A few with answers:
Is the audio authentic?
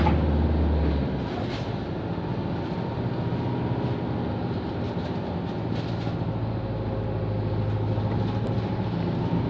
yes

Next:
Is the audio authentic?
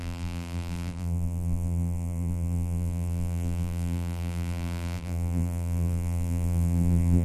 no